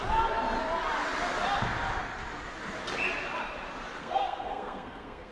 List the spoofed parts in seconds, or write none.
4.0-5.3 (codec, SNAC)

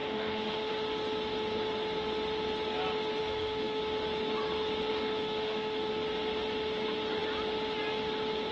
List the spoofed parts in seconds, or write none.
0.0-0.7 (autoencoder, DAC-VAE); 3.2-3.8; 4.9-5.9

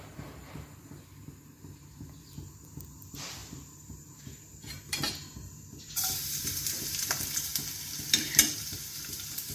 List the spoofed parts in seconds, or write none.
0.0-7.5 (vocoder, BigVGAN v2); 8.5-9.5

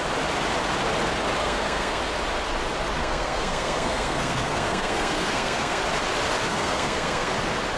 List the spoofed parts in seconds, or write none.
1.4-2.0 (codec, SNAC); 3.0-5.8; 6.5-7.3

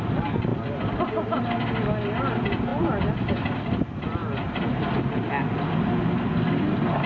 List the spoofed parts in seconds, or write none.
none

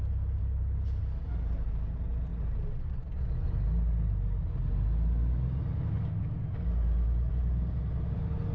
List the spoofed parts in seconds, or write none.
0.4-1.0 (codec, HILCodec)